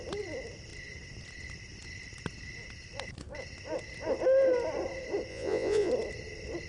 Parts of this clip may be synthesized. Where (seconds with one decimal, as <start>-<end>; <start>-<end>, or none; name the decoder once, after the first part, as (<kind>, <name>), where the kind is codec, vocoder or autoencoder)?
5.3-5.9 (vocoder, Vocos)